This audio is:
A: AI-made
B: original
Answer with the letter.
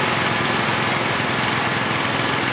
B